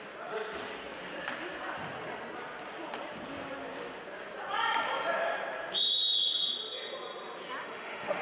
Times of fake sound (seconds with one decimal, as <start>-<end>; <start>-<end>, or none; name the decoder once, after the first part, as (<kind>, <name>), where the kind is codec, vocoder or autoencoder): 7.6-8.2 (autoencoder, DAC-VAE)